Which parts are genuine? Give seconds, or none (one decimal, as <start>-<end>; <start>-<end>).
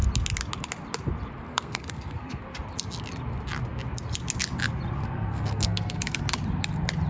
0.0-1.5; 2.4-5.0; 6.2-7.1